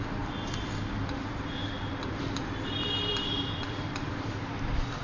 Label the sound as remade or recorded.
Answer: remade